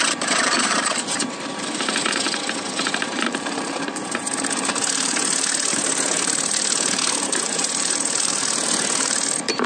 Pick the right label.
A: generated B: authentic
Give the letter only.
A